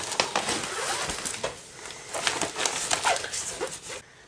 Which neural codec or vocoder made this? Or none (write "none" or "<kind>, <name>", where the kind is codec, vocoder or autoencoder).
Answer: none